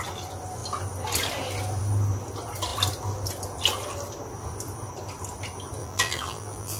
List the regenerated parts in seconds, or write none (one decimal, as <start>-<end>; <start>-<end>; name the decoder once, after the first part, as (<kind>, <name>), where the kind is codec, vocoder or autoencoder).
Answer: 5.8-6.8 (vocoder, BigVGAN v2)